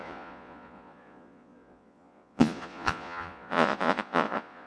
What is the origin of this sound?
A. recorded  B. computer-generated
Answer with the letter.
B